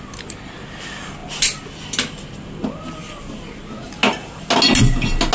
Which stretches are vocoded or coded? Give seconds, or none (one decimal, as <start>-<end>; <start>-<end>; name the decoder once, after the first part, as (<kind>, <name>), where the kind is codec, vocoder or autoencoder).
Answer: none